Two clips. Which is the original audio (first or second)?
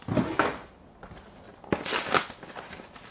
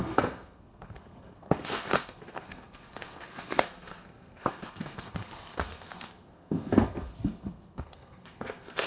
first